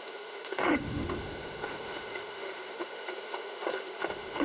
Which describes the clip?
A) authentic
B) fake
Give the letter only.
B